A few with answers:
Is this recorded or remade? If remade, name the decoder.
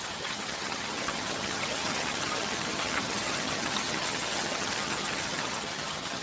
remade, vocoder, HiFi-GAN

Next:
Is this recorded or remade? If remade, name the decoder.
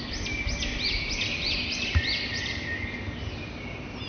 recorded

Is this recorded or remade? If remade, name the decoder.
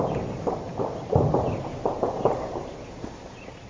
recorded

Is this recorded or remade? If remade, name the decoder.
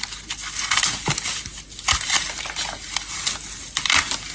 recorded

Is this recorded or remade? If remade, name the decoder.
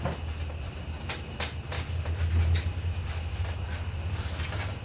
recorded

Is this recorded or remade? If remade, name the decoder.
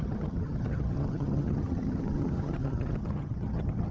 remade, vocoder, HiFi-GAN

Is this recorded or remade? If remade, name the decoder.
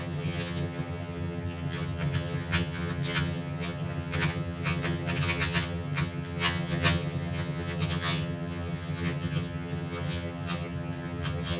remade, vocoder, HiFi-GAN